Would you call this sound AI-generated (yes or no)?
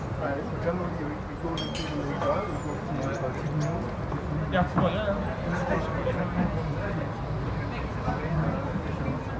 no